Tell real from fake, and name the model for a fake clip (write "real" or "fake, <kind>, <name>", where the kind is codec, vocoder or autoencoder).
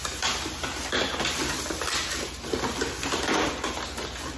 real